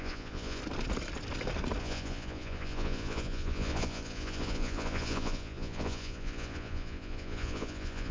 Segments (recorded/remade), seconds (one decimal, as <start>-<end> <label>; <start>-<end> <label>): 0.0-0.6 remade; 0.6-1.8 recorded; 1.8-8.1 remade

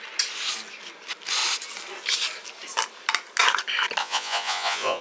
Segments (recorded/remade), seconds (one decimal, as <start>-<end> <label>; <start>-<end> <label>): 0.0-4.0 recorded; 4.0-5.0 remade

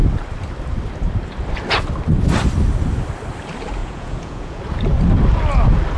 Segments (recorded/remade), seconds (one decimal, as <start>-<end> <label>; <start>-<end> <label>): 0.0-3.8 recorded; 3.8-4.6 remade; 4.6-6.0 recorded